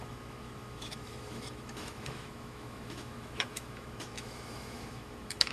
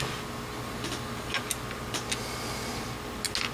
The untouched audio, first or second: second